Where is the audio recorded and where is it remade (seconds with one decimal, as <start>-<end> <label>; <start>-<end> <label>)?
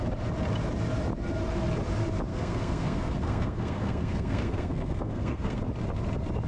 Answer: 0.0-2.3 recorded; 2.3-5.6 remade; 5.6-6.5 recorded